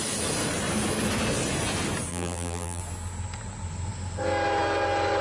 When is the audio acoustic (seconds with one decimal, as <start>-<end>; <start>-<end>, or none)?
0.0-2.1; 2.8-5.2